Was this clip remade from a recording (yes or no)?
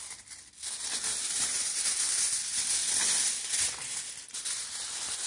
no